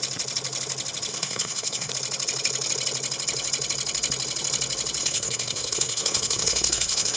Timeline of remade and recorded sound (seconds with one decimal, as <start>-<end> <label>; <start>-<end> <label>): 0.0-1.1 recorded; 1.1-1.9 remade; 1.9-5.0 recorded; 5.0-7.2 remade